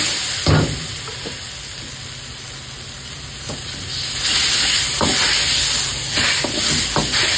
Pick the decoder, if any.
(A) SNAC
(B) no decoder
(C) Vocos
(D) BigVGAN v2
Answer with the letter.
B